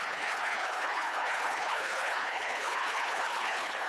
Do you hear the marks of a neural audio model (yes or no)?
yes